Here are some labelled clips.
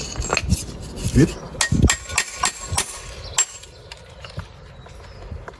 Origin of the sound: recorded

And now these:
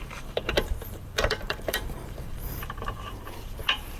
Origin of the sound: remade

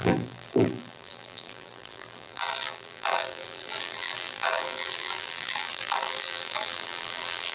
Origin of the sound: remade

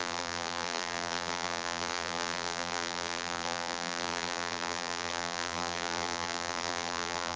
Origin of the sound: remade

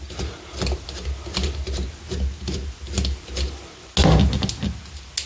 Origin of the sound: recorded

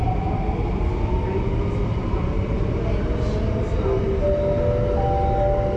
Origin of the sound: recorded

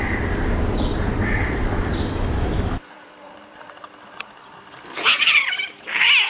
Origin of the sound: remade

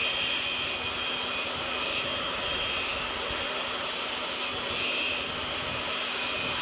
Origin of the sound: recorded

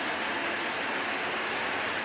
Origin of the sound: recorded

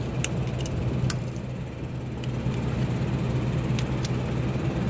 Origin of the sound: recorded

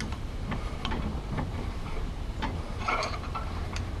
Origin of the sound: remade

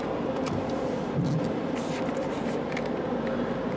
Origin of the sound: remade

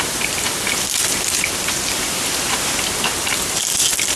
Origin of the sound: remade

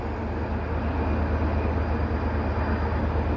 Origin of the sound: recorded